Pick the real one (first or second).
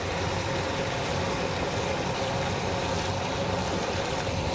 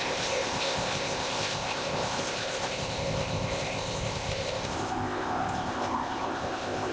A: first